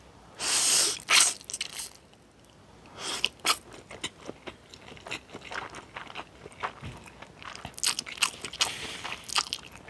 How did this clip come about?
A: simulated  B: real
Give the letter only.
B